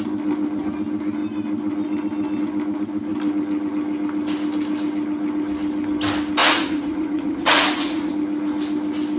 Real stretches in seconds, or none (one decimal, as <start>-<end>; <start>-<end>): 0.0-6.4; 8.1-9.2